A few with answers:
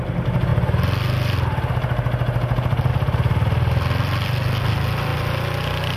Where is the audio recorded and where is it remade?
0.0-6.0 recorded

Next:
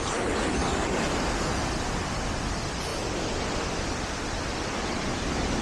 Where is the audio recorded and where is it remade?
0.0-0.7 recorded; 0.7-1.3 remade; 1.3-5.6 recorded